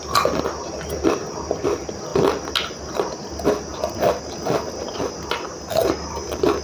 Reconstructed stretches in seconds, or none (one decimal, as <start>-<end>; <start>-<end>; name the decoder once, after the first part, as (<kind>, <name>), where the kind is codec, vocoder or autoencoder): none